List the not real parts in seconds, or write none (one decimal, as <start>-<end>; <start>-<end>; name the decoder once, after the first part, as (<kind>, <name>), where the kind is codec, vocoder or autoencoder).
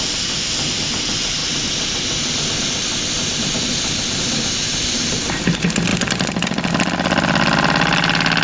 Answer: none